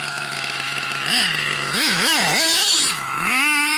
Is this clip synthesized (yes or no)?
yes